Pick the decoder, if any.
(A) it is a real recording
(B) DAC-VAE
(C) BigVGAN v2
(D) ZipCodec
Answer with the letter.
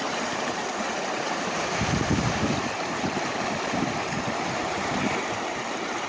C